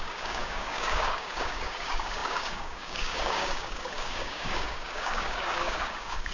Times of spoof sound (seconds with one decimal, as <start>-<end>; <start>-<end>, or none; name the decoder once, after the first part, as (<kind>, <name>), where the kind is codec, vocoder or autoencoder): 0.0-6.3 (codec, DAC)